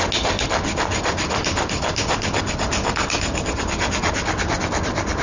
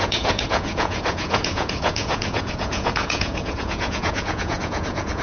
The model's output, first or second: second